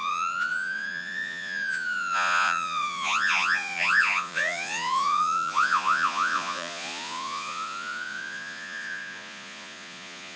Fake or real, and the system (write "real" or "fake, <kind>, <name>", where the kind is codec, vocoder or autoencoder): fake, vocoder, Vocos